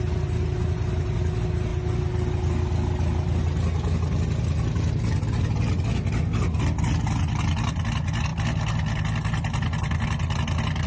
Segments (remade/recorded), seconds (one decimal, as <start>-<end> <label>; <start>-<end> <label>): 0.0-10.9 recorded